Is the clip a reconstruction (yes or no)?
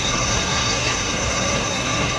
yes